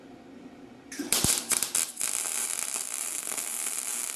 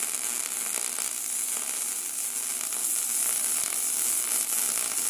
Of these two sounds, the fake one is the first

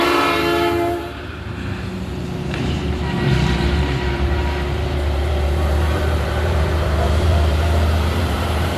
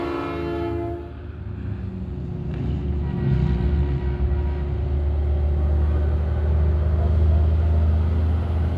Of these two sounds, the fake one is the first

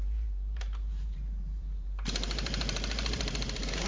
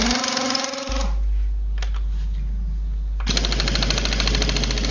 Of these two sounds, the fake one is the first